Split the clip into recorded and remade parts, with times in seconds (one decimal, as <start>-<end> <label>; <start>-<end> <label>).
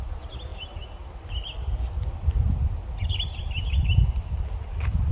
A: 0.0-5.1 recorded